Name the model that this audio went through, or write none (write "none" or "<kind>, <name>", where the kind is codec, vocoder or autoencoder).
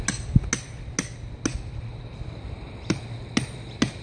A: none